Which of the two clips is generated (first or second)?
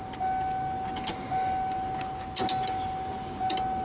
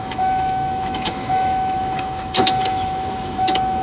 second